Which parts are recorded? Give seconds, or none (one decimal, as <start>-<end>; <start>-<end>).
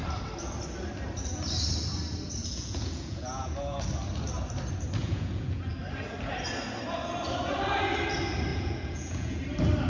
0.0-2.4; 3.8-5.0; 5.7-8.5; 9.4-9.9